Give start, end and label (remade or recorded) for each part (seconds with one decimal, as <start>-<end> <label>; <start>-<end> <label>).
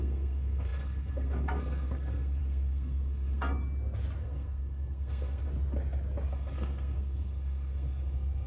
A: 0.0-3.5 remade; 3.5-4.2 recorded; 4.2-5.5 remade; 5.5-6.3 recorded; 6.3-8.5 remade